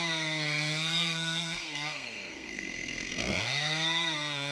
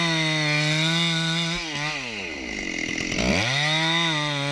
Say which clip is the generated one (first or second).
first